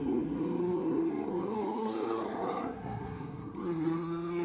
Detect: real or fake fake